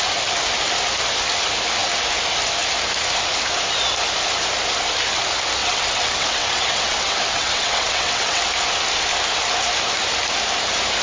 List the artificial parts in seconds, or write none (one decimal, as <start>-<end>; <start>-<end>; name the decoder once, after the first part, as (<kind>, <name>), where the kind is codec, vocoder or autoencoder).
5.6-8.4 (vocoder, WaveNeXt)